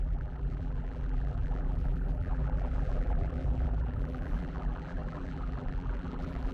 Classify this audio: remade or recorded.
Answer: remade